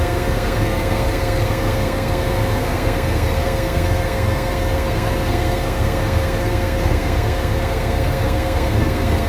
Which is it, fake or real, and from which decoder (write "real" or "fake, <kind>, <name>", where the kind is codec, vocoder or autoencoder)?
fake, codec, SNAC